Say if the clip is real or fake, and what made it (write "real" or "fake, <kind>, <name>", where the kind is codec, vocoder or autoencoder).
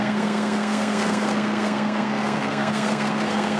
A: fake, codec, SNAC